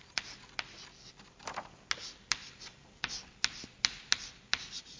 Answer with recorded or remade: recorded